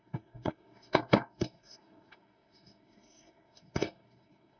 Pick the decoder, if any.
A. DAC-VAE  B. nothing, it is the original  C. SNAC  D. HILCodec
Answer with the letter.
C